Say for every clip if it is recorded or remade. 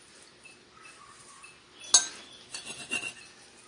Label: recorded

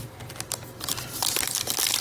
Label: remade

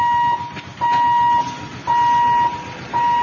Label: recorded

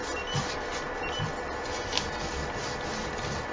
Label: recorded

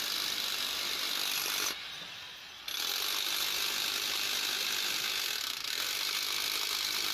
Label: recorded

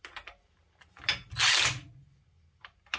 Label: recorded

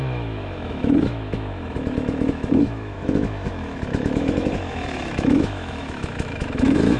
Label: remade